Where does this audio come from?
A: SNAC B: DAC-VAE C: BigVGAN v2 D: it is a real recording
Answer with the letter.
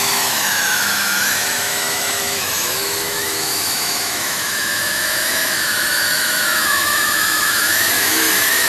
B